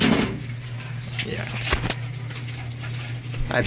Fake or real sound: real